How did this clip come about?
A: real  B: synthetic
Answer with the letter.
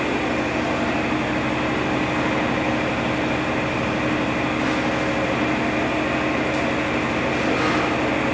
A